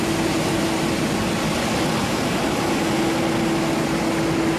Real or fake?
real